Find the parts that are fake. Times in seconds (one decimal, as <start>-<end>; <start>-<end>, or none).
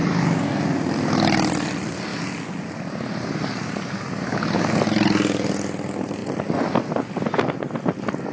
none